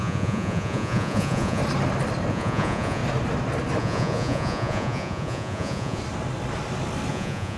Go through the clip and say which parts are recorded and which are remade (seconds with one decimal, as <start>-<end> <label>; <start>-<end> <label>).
0.0-1.6 remade; 1.6-2.3 recorded; 2.3-3.0 remade; 3.0-3.8 recorded; 3.8-6.0 remade; 6.0-7.1 recorded; 7.1-7.6 remade